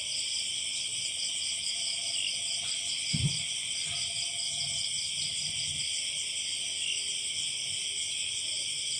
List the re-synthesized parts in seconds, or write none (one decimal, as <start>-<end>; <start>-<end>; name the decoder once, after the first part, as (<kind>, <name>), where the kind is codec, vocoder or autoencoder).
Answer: 2.8-3.7 (vocoder, Vocos)